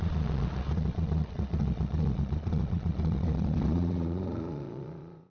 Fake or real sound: fake